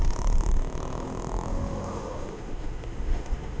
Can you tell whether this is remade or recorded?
remade